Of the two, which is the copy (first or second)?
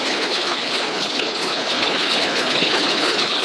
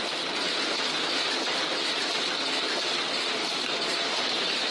first